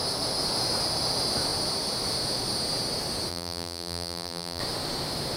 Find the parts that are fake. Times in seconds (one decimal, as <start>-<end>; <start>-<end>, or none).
3.3-4.6